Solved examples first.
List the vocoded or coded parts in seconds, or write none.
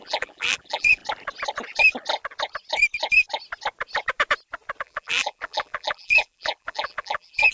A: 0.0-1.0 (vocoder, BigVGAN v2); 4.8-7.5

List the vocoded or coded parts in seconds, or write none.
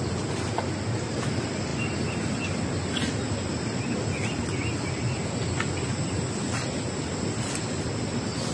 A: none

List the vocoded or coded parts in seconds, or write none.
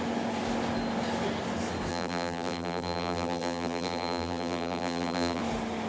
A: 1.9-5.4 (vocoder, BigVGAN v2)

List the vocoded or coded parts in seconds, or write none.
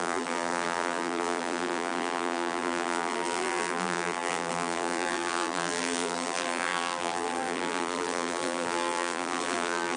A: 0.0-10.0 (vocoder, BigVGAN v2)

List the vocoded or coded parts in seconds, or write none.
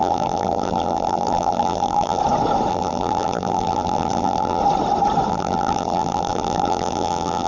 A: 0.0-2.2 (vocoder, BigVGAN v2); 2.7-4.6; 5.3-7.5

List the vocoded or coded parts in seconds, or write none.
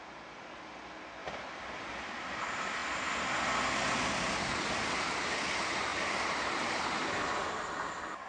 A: 1.2-1.9 (vocoder, BigVGAN v2); 5.9-6.8